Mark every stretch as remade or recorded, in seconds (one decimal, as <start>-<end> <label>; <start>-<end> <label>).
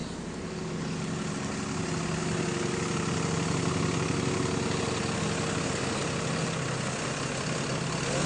0.0-8.3 recorded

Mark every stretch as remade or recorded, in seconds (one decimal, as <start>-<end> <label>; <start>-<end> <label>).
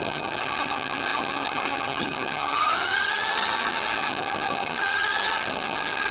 0.0-6.1 remade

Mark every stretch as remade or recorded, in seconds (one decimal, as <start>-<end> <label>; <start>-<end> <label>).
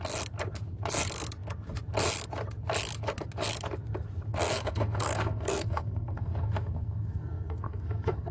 0.0-4.3 recorded; 4.3-8.3 remade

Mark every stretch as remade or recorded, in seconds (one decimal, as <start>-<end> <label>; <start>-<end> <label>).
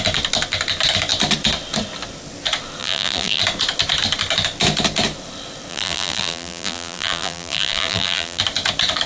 0.0-2.8 recorded; 2.8-3.4 remade; 3.4-5.7 recorded; 5.7-8.4 remade; 8.4-9.1 recorded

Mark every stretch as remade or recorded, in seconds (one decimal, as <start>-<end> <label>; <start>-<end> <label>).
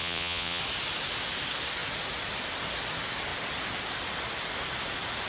0.0-0.6 remade; 0.6-5.3 recorded